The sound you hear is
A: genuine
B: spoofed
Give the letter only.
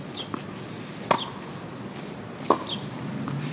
A